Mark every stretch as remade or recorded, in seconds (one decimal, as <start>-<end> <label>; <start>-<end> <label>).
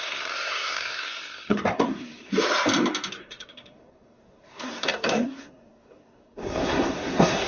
0.0-2.3 remade; 2.3-3.1 recorded; 3.1-7.5 remade